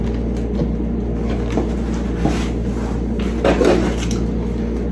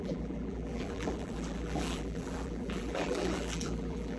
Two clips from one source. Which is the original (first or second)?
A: first